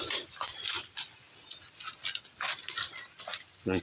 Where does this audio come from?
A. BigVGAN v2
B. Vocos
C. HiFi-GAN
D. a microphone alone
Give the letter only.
D